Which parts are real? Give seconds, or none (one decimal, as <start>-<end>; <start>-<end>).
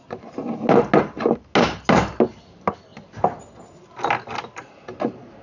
0.0-5.4